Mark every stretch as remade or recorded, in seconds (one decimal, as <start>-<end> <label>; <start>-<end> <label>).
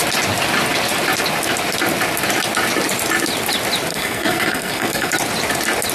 0.0-3.9 recorded; 3.9-5.1 remade; 5.1-5.9 recorded